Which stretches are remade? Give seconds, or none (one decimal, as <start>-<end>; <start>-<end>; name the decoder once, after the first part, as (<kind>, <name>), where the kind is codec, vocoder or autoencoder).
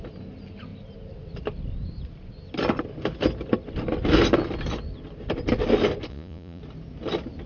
6.1-6.6 (vocoder, Vocos)